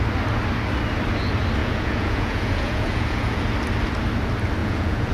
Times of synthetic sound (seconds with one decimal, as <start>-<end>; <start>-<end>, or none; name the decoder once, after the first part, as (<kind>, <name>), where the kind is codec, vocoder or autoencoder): 1.6-3.4 (vocoder, Vocos); 4.6-5.1

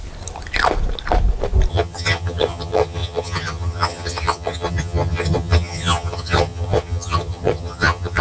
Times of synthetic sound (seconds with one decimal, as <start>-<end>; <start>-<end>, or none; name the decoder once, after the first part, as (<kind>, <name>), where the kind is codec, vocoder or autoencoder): 1.7-8.2 (vocoder, HiFi-GAN)

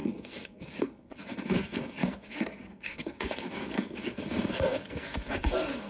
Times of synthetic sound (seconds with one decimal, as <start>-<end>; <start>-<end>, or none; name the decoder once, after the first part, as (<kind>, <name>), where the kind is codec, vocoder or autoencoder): 0.0-5.9 (codec, SNAC)